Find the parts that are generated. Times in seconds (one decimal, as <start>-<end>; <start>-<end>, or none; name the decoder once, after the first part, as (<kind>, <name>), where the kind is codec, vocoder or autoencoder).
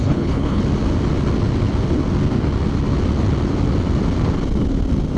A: 0.0-0.6 (codec, HILCodec)